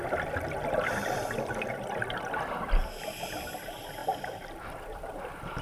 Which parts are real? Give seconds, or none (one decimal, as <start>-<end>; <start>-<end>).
0.0-4.0